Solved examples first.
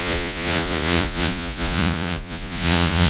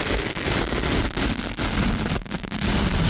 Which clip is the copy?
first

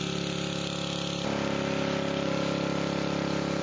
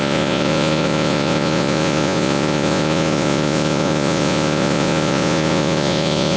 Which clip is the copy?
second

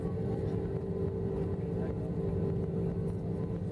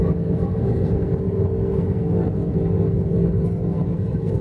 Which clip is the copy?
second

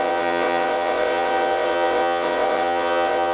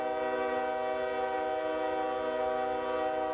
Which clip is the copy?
first